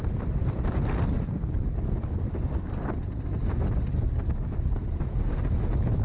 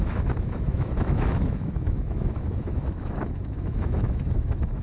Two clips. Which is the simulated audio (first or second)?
second